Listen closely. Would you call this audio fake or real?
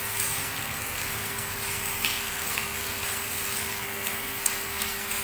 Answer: fake